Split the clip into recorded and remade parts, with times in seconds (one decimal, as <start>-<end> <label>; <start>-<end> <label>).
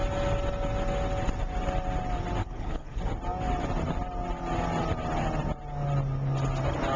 0.0-2.4 recorded; 2.4-3.0 remade; 3.0-7.0 recorded